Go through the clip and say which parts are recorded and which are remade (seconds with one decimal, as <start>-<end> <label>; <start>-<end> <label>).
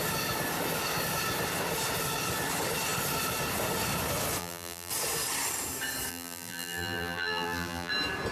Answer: 0.0-4.4 recorded; 4.4-4.9 remade; 4.9-6.1 recorded; 6.1-7.9 remade; 7.9-8.3 recorded